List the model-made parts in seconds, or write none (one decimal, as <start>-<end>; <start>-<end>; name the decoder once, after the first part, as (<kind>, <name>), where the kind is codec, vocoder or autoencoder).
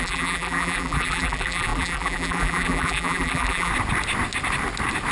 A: 0.0-3.7 (vocoder, BigVGAN v2)